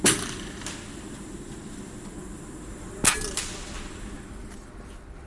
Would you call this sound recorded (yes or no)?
yes